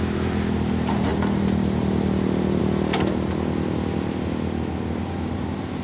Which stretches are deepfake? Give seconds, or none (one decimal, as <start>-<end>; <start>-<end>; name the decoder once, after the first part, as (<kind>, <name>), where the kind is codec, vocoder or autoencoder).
none